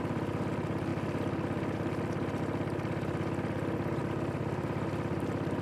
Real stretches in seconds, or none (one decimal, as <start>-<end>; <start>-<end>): 0.0-5.6